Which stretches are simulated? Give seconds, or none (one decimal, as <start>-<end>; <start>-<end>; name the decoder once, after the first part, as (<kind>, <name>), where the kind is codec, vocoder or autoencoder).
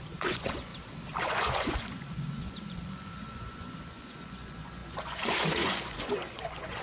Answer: 0.0-0.7 (vocoder, Vocos); 1.2-6.8